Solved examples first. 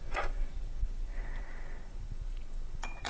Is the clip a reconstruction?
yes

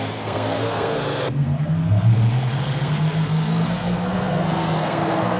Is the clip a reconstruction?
yes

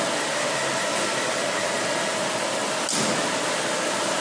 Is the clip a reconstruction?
no